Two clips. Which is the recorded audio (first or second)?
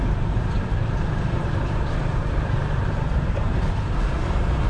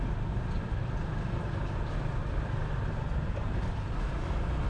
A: second